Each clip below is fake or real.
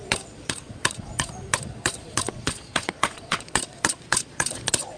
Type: fake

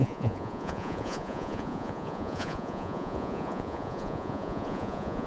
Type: fake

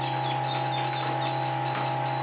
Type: real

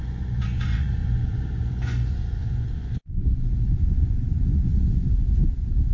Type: fake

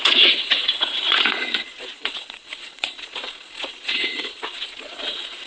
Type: fake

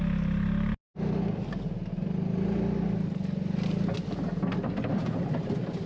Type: real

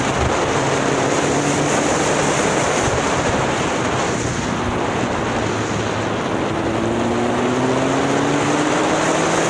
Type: real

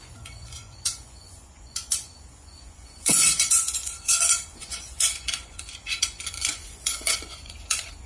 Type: fake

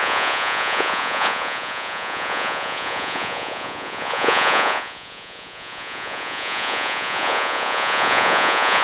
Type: fake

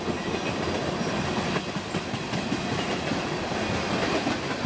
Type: real